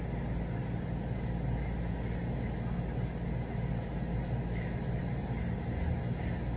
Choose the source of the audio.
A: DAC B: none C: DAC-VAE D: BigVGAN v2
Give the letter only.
B